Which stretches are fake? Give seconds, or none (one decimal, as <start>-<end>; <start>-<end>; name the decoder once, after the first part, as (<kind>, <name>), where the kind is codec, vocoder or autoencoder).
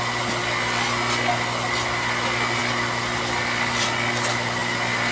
none